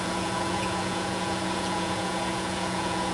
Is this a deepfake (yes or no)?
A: yes